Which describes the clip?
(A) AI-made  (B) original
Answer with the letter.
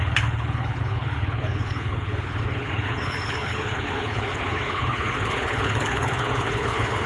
A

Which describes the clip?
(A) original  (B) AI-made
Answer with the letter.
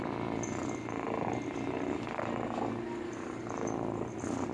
A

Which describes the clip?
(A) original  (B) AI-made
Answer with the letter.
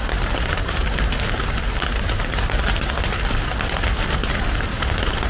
A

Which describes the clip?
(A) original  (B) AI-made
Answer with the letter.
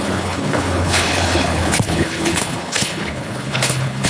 B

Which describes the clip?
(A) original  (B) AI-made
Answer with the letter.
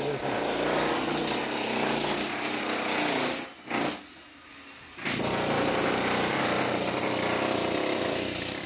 A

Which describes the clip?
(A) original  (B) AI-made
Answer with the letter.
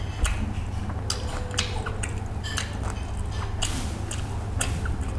A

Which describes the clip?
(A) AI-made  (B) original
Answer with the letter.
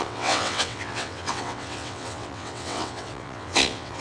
A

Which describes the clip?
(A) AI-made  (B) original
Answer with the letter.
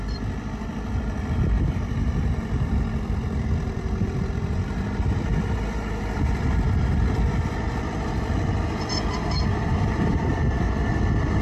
A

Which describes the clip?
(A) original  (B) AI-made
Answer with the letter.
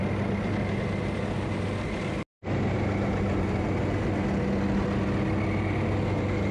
A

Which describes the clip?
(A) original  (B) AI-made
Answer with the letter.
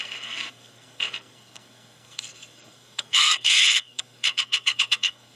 B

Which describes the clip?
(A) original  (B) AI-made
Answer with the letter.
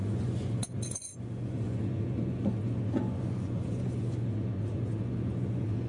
B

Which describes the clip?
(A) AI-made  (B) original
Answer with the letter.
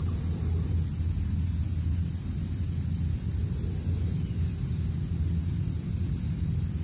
B